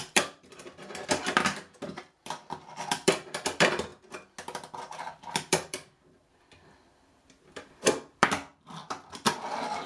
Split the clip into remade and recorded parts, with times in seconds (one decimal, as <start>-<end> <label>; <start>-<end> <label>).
0.0-3.9 remade; 3.9-5.3 recorded; 5.3-8.8 remade; 8.8-9.4 recorded; 9.4-9.9 remade